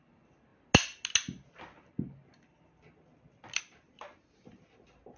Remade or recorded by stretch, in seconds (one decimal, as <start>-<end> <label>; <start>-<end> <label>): 0.0-5.2 recorded